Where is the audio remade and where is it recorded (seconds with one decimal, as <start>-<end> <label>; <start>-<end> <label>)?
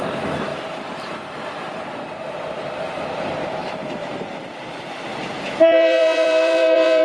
0.0-7.0 remade